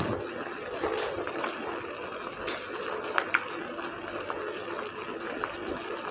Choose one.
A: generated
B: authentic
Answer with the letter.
B